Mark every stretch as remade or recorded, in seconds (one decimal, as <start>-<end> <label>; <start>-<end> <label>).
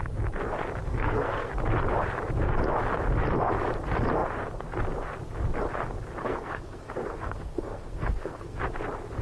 0.0-0.9 recorded; 0.9-1.5 remade; 1.5-6.2 recorded; 6.2-8.6 remade; 8.6-9.2 recorded